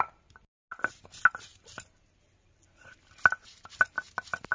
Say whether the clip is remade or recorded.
recorded